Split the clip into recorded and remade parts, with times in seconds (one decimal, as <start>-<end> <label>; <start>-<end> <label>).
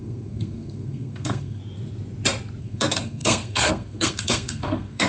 0.0-1.6 remade; 1.6-2.6 recorded; 2.6-5.1 remade